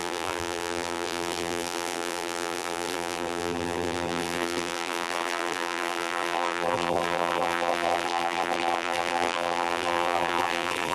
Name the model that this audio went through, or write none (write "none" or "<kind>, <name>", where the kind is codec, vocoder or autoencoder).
vocoder, BigVGAN v2